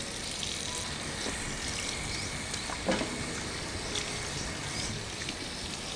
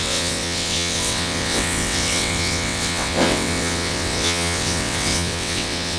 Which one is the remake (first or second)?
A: second